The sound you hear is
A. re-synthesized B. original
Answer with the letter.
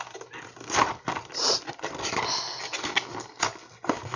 B